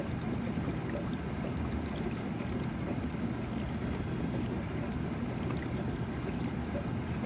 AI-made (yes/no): no